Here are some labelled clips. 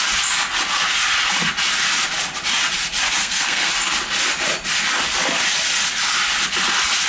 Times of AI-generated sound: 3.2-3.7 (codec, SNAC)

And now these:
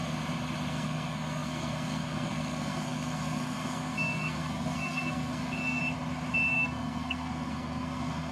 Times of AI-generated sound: 0.7-5.8 (codec, SNAC); 6.5-8.3

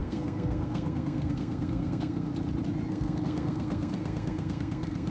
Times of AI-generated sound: 0.0-2.3 (codec, SNAC); 2.9-5.1

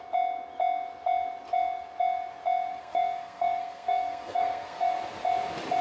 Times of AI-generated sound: 2.7-4.9 (codec, SNAC)